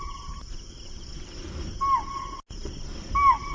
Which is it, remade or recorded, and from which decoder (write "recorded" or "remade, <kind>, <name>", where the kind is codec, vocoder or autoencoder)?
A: recorded